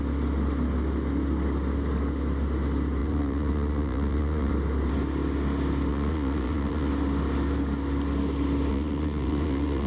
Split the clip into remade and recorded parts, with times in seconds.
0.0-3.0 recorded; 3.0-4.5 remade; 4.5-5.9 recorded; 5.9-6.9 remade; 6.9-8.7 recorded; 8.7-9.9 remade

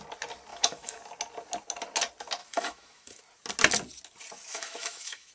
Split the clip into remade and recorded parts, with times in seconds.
0.0-0.5 recorded; 0.5-1.0 remade; 1.0-2.4 recorded; 2.4-3.2 remade; 3.2-4.5 recorded; 4.5-5.3 remade

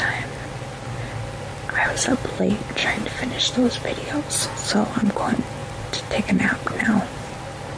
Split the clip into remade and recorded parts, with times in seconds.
0.0-1.8 recorded; 1.8-2.4 remade; 2.4-2.8 recorded; 2.8-4.1 remade; 4.1-5.6 recorded; 5.6-7.3 remade; 7.3-7.8 recorded

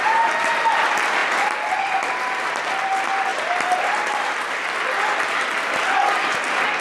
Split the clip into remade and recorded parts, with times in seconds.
0.0-6.8 recorded

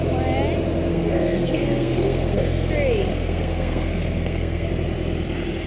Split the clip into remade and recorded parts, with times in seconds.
0.0-0.9 recorded; 0.9-2.7 remade; 2.7-3.1 recorded; 3.1-4.7 remade; 4.7-5.7 recorded

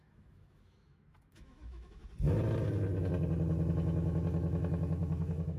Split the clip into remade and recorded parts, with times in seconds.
0.0-2.0 remade; 2.0-3.7 recorded; 3.7-5.6 remade